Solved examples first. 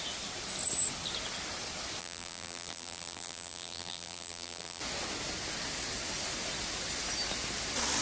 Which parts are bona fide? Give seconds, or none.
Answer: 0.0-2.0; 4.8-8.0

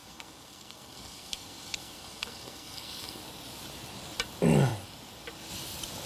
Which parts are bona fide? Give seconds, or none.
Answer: 3.2-6.1